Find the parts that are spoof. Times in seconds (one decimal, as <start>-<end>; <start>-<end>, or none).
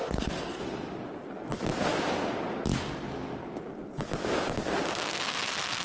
0.0-0.6